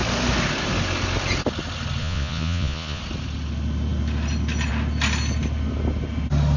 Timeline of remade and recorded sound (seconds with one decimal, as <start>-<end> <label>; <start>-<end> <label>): 0.0-2.0 recorded; 2.0-3.0 remade; 3.0-6.6 recorded